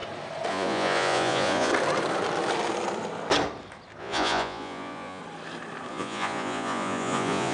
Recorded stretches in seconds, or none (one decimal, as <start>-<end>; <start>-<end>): 0.0-0.5; 1.7-4.0; 5.2-5.9